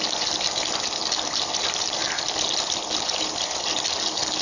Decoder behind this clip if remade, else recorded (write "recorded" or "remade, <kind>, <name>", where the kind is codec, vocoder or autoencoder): recorded